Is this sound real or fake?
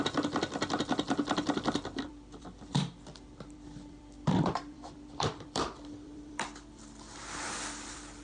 fake